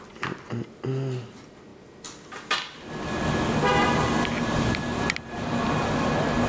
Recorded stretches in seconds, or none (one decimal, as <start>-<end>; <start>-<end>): 0.0-6.5